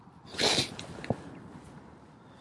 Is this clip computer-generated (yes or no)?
no